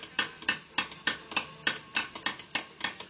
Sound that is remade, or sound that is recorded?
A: recorded